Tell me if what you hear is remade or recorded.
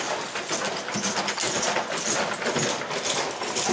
recorded